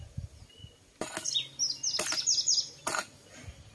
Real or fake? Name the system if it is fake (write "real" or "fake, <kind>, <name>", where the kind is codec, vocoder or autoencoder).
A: real